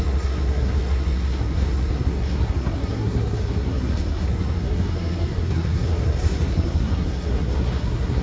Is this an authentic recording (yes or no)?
no